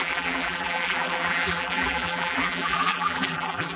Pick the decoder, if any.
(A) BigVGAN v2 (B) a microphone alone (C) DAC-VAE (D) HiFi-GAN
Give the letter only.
A